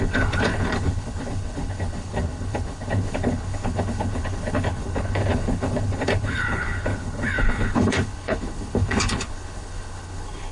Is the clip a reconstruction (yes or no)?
yes